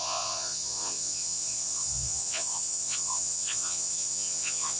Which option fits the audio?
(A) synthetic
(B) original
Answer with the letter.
A